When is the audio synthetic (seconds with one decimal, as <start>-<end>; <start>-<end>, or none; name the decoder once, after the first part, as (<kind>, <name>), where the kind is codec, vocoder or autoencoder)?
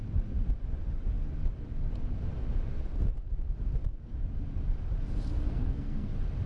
5.5-6.1 (codec, SNAC)